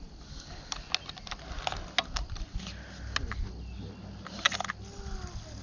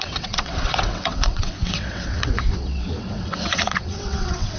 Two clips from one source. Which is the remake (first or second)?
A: second